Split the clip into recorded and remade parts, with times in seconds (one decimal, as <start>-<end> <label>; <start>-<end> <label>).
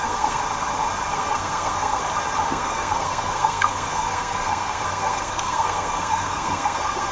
0.0-0.4 remade; 0.4-1.1 recorded; 1.1-2.0 remade; 2.0-2.5 recorded; 2.5-7.1 remade